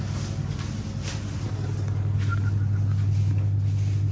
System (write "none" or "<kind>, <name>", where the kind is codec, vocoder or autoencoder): none